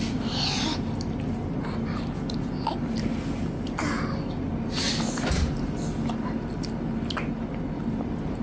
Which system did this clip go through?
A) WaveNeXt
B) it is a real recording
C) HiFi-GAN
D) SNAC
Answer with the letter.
B